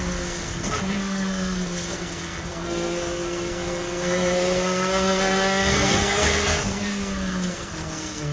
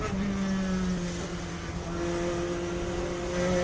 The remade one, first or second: first